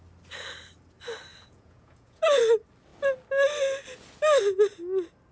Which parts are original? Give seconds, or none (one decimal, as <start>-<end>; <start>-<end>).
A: 0.0-1.3; 2.4-5.3